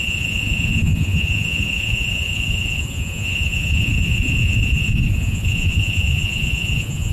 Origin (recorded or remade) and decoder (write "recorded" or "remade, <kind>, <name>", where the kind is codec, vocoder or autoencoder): remade, vocoder, Vocos